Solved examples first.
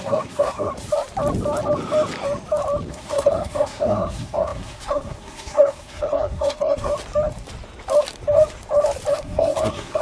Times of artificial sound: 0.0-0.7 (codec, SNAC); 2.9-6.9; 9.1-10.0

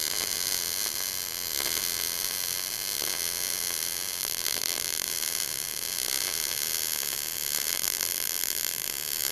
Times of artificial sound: 4.2-5.1 (vocoder, BigVGAN v2); 7.7-8.9

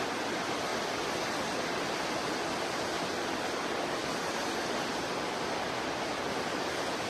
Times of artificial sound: none

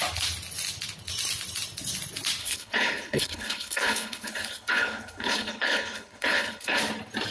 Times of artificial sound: 2.4-6.8 (codec, HILCodec)

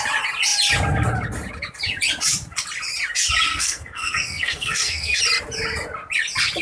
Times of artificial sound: 3.5-5.2 (codec, SNAC)

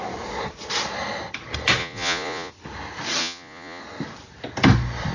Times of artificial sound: 1.8-2.5 (vocoder, Vocos); 3.2-3.8

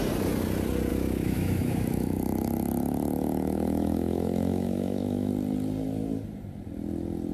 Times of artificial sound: 0.9-5.3 (autoencoder, DAC-VAE)

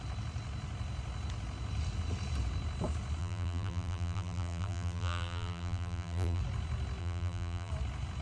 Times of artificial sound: 3.2-6.4 (vocoder, BigVGAN v2); 7.0-7.7